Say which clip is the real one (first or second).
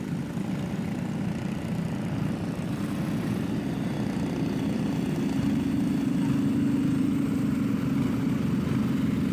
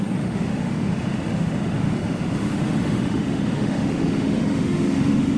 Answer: first